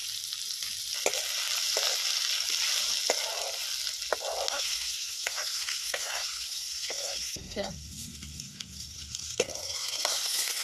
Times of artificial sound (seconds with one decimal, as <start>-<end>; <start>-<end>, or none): 4.5-10.6